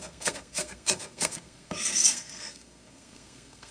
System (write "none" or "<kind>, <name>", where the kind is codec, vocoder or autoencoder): codec, SNAC